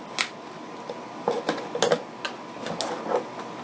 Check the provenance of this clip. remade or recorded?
recorded